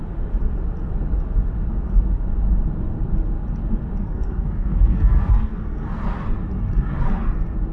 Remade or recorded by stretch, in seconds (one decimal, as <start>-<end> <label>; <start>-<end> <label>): 0.0-4.0 recorded; 4.0-6.0 remade; 6.0-7.7 recorded